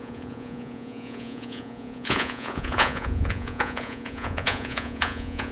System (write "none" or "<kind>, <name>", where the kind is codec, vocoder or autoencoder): vocoder, Vocos